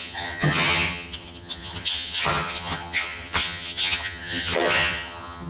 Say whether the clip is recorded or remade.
remade